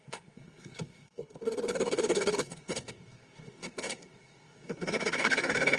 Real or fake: fake